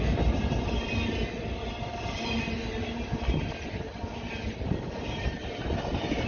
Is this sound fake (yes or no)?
no